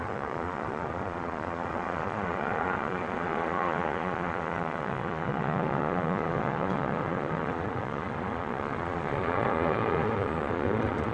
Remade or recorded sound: remade